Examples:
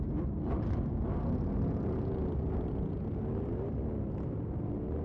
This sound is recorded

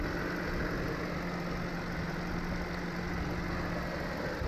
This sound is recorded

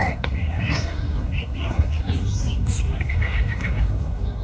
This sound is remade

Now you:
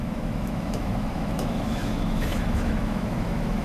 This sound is remade